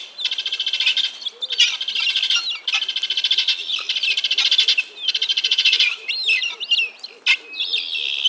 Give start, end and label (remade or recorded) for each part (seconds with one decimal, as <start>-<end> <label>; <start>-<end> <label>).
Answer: 0.0-5.3 recorded; 5.3-6.1 remade; 6.1-8.3 recorded